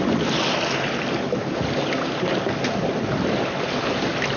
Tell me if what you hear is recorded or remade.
recorded